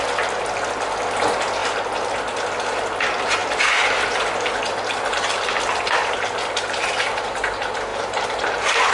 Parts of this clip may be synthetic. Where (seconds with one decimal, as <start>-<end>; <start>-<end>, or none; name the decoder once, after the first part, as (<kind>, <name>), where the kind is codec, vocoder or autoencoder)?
3.4-7.3 (vocoder, BigVGAN v2)